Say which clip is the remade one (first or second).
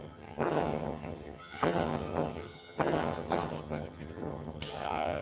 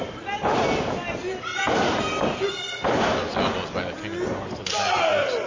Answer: first